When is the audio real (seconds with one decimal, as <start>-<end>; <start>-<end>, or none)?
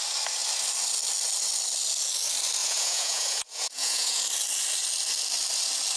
0.0-2.6; 4.2-6.0